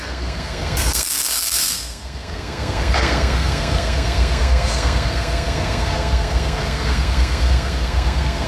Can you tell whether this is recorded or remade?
remade